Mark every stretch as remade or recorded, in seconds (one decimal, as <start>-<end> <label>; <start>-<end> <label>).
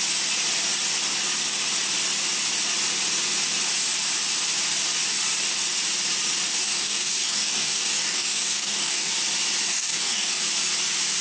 0.0-6.6 recorded; 6.6-9.1 remade; 9.1-9.7 recorded; 9.7-10.4 remade; 10.4-11.2 recorded